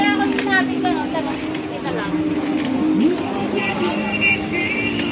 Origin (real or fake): real